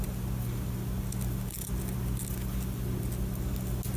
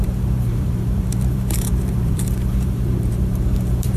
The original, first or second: first